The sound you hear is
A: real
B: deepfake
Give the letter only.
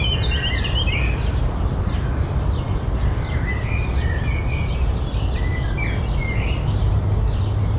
A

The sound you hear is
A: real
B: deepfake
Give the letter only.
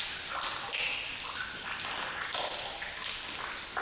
A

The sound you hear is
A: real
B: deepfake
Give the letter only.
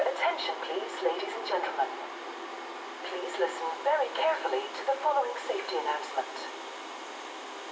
A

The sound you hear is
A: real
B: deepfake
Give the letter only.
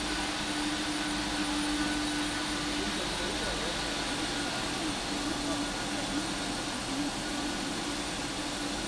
A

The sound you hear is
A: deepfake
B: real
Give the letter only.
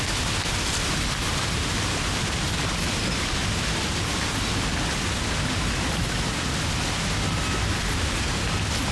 B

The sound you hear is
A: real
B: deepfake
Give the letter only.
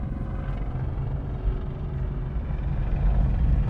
A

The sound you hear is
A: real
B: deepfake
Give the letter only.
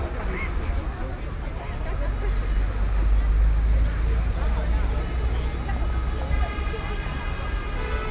A